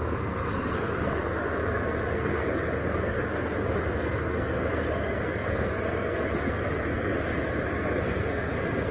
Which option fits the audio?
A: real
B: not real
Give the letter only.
B